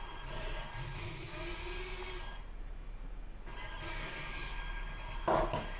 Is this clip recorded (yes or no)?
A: yes